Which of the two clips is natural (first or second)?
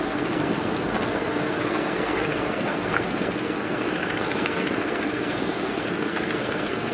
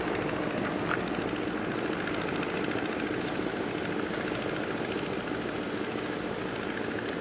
second